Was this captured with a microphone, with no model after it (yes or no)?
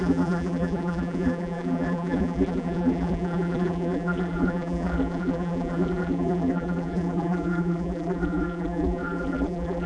no